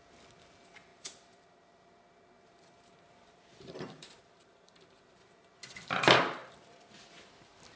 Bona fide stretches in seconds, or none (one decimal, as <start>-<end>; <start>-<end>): 0.0-0.9; 5.6-6.4; 7.0-7.8